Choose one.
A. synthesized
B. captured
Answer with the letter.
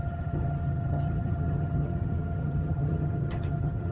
A